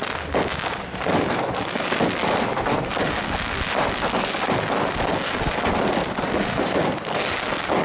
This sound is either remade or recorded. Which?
recorded